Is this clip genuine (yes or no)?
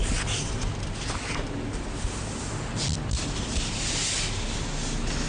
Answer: yes